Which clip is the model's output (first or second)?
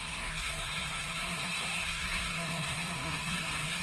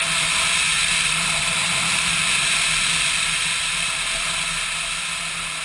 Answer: first